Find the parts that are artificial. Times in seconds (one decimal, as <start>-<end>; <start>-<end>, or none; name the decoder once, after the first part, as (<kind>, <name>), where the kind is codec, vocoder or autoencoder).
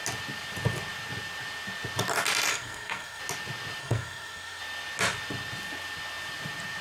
2.5-3.2 (codec, SNAC); 3.8-4.6